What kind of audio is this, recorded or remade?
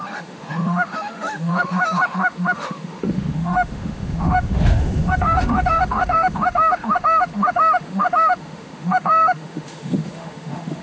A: remade